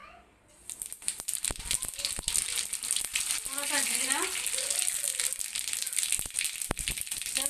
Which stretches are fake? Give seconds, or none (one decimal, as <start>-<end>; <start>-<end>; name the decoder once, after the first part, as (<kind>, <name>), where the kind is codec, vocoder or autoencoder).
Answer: none